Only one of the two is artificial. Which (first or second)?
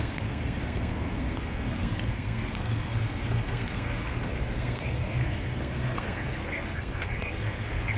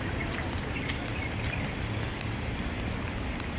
first